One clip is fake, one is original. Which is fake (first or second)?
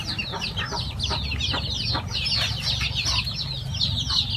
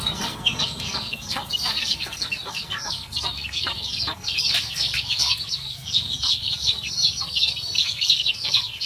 second